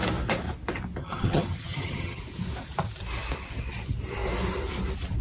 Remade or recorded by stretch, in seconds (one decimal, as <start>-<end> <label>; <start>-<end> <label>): 0.0-1.0 recorded; 1.0-2.2 remade; 2.2-5.2 recorded

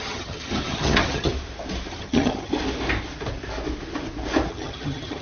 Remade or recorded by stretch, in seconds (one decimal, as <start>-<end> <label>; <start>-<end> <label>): 0.0-1.3 remade; 1.3-1.9 recorded; 1.9-2.5 remade; 2.5-4.5 recorded; 4.5-5.2 remade

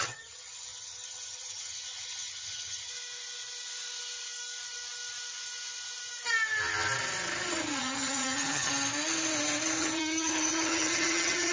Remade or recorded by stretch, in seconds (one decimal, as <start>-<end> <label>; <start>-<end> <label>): 0.0-2.9 remade; 2.9-7.8 recorded; 7.8-8.7 remade; 8.7-9.8 recorded; 9.8-11.5 remade

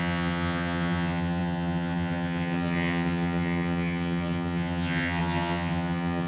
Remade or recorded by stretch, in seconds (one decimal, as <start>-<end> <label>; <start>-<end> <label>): 0.0-6.3 remade

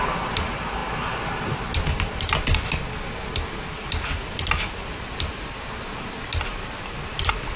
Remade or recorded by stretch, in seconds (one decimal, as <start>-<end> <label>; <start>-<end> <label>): 0.0-7.6 recorded